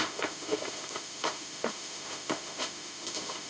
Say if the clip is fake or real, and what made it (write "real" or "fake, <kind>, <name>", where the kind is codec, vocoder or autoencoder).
fake, autoencoder, DAC-VAE